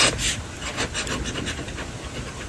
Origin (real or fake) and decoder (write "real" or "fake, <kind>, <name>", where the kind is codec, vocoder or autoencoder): real